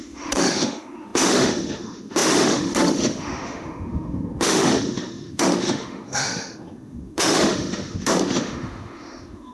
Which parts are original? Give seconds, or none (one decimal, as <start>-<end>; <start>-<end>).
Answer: none

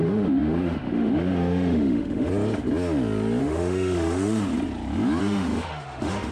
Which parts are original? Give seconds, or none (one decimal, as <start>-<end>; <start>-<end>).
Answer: 2.3-3.4; 4.5-5.2

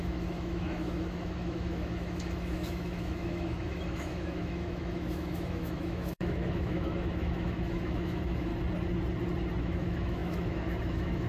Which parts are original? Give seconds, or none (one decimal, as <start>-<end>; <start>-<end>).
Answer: 8.5-9.6

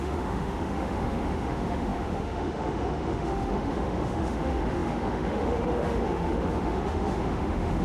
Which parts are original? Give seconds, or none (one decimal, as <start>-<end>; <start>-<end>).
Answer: none

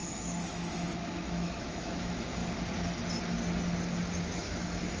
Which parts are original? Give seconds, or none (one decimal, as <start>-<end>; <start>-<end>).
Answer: 2.4-4.2